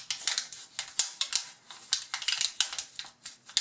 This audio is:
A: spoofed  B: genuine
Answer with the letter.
B